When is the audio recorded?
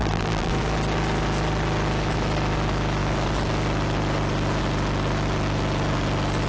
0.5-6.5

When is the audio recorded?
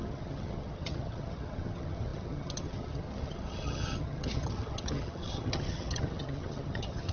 none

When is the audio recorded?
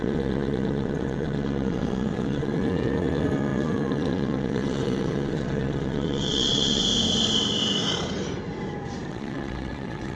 6.8-9.1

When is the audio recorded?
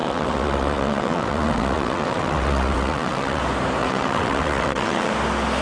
3.4-3.8; 5.1-5.6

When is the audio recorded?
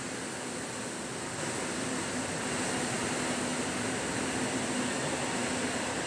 0.0-6.1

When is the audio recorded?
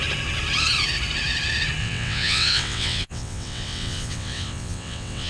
0.0-1.8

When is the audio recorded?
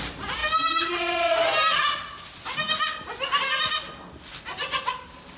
0.0-5.4